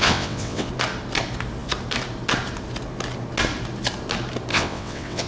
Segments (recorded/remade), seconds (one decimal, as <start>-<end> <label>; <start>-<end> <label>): 0.0-0.7 remade; 0.7-4.5 recorded; 4.5-5.3 remade